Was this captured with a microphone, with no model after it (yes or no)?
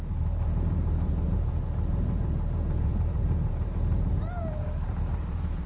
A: no